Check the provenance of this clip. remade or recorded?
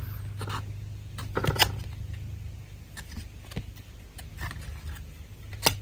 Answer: recorded